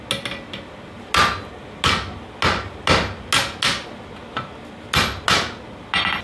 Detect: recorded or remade recorded